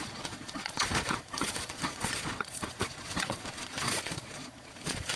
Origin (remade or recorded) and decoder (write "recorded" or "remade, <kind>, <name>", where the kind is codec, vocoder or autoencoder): remade, vocoder, Vocos